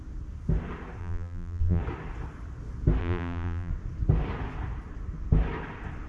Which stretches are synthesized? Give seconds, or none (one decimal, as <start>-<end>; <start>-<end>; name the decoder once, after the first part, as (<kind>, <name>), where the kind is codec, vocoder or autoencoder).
1.0-1.8 (vocoder, BigVGAN v2); 3.0-3.7